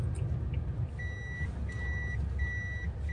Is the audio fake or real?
real